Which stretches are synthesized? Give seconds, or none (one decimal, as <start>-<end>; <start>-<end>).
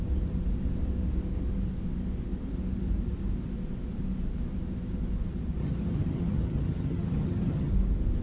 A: 5.6-7.7